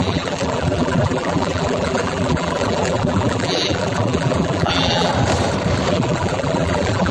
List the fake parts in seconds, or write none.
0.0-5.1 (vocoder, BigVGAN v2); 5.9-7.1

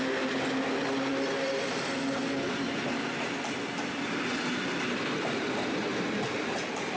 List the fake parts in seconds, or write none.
none

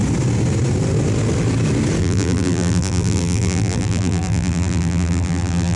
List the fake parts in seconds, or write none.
2.0-5.8 (vocoder, BigVGAN v2)

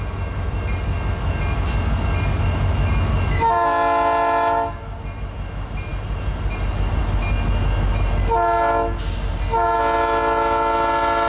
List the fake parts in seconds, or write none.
none

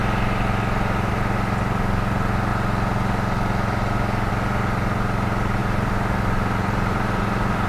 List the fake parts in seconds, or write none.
5.6-7.7 (vocoder, BigVGAN v2)

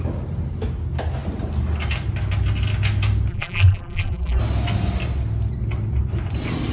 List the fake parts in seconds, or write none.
3.3-4.4 (vocoder, BigVGAN v2)